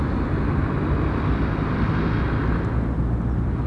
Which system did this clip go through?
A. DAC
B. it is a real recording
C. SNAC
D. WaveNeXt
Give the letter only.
B